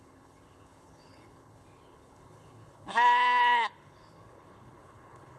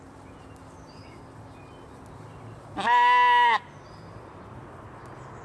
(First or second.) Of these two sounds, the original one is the second